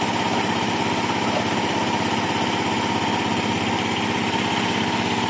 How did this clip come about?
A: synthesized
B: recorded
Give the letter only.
B